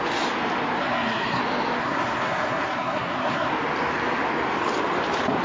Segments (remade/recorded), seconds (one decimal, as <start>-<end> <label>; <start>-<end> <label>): 0.0-0.8 recorded; 0.8-1.4 remade; 1.4-1.8 recorded; 1.8-3.5 remade; 3.5-5.4 recorded